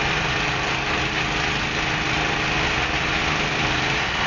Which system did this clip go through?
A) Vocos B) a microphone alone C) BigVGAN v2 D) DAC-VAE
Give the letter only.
B